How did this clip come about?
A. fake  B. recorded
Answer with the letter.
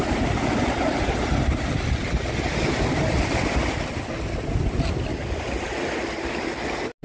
B